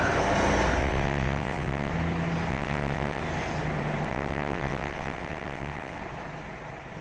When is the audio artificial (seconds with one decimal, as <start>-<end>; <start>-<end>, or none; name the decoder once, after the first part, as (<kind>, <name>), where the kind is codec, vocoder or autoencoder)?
0.8-1.9 (vocoder, WaveNeXt); 2.5-3.2; 4.1-6.0